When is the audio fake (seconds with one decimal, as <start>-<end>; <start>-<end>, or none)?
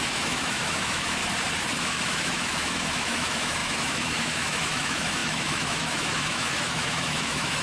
0.0-1.2; 1.8-7.6